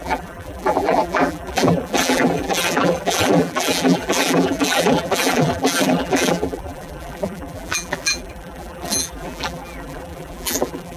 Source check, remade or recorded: remade